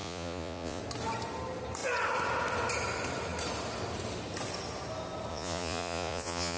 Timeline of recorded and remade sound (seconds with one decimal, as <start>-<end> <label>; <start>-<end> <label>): 0.0-0.8 remade; 0.8-5.3 recorded; 5.3-6.6 remade